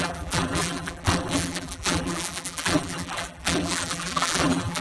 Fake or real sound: fake